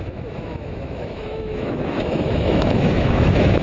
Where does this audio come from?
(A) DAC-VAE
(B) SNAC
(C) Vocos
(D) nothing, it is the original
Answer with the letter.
A